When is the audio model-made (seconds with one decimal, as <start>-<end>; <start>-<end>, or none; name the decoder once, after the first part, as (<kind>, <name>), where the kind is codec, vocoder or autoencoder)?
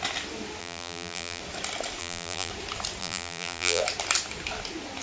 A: 0.6-1.4 (vocoder, BigVGAN v2); 2.0-2.5; 3.0-3.8